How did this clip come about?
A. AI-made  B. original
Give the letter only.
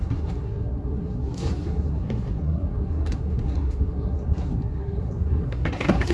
A